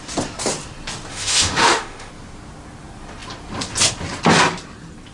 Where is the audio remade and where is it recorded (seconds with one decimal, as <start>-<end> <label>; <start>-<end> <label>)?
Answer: 0.0-1.1 recorded; 1.1-2.1 remade; 2.1-5.1 recorded